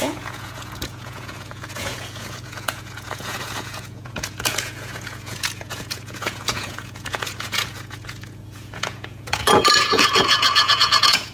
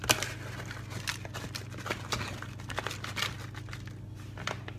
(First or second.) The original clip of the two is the second